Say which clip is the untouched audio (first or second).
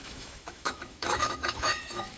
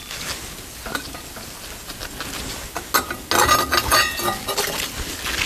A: second